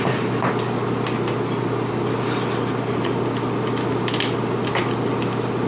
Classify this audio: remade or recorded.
recorded